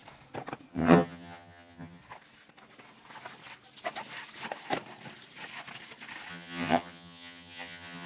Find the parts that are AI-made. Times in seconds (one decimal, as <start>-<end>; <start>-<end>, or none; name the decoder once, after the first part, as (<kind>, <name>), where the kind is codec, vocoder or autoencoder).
0.7-2.0 (vocoder, HiFi-GAN); 6.3-8.1